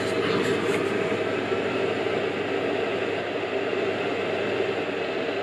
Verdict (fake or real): real